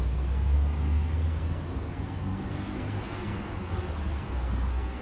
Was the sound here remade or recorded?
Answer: remade